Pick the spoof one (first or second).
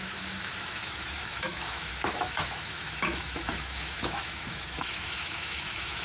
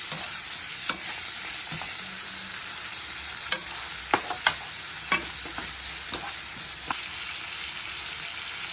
first